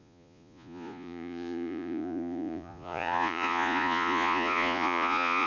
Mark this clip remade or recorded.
remade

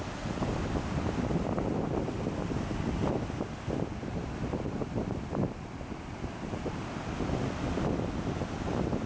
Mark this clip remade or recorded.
recorded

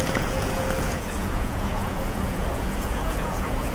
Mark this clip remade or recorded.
remade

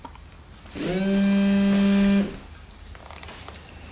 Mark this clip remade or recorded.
recorded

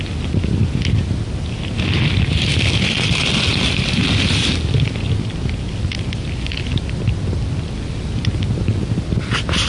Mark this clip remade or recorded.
recorded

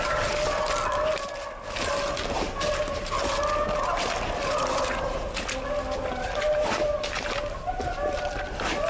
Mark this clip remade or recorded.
recorded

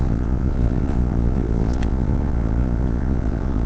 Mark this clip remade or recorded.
remade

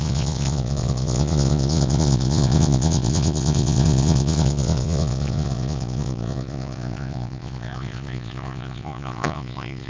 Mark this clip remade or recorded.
remade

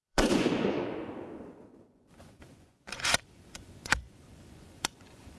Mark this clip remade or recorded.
remade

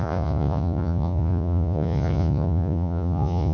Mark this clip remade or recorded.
remade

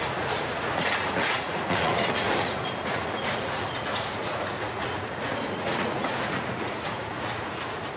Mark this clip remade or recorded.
remade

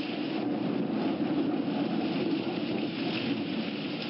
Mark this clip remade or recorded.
recorded